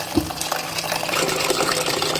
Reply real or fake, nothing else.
fake